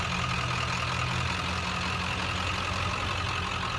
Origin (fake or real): real